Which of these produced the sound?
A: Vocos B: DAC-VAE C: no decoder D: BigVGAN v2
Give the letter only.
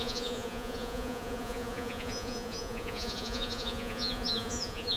A